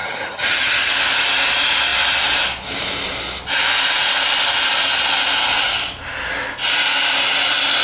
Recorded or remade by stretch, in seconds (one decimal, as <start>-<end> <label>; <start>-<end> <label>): 0.0-0.9 remade; 0.9-7.8 recorded